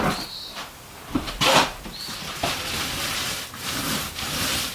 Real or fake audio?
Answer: fake